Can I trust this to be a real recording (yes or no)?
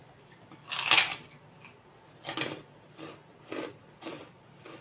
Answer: yes